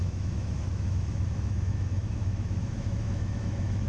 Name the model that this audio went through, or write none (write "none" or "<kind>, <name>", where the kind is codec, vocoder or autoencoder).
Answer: autoencoder, DAC-VAE